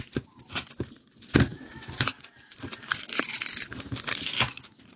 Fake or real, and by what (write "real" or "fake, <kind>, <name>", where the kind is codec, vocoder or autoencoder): real